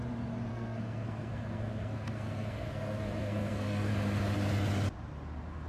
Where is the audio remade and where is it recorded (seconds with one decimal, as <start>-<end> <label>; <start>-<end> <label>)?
0.0-0.5 recorded; 0.5-3.9 remade; 3.9-5.7 recorded

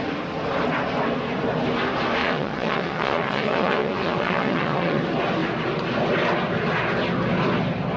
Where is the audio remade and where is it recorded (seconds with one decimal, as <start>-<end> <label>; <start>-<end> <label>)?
0.0-2.2 recorded; 2.2-5.0 remade; 5.0-8.0 recorded